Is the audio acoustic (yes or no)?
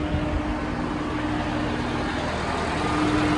yes